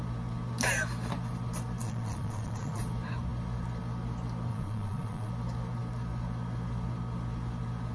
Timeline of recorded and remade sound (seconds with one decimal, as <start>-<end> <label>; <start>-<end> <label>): 0.0-1.8 recorded; 1.8-2.8 remade; 2.8-4.5 recorded; 4.5-5.3 remade; 5.3-7.9 recorded